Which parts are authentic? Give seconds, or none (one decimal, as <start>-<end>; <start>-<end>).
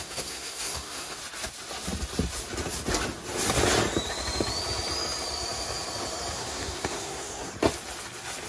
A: 1.2-6.3; 7.5-8.5